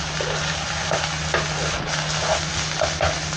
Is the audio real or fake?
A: real